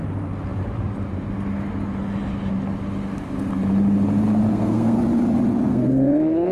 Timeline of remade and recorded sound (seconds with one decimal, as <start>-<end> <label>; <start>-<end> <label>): 0.0-4.5 recorded; 4.5-5.0 remade; 5.0-5.7 recorded; 5.7-6.5 remade